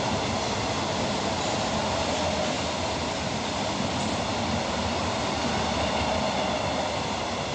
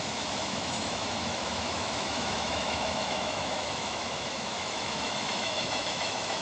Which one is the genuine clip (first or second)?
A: first